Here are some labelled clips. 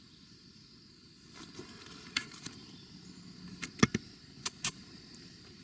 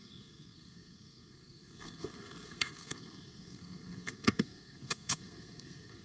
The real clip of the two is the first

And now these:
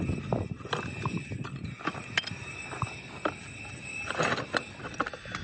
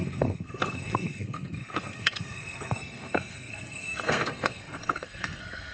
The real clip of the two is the first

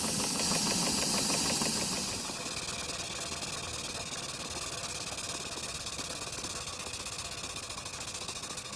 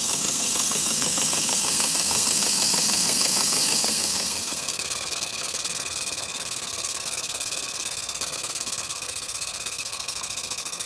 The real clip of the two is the first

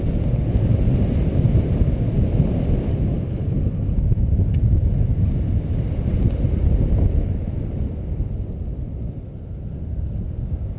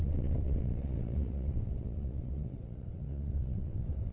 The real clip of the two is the first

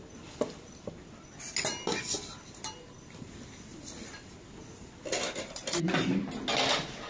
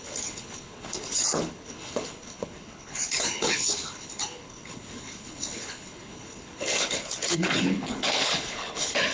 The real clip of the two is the first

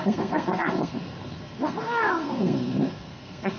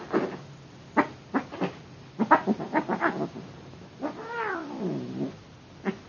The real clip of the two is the second